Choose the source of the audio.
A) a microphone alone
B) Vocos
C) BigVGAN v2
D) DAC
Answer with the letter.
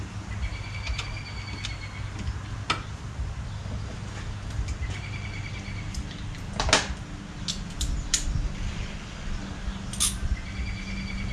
A